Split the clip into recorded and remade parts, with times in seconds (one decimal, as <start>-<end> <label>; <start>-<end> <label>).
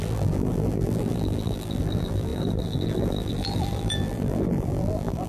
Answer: 0.0-5.3 remade